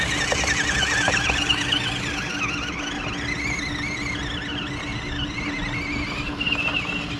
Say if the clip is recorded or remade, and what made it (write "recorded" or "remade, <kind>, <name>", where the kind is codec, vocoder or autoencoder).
recorded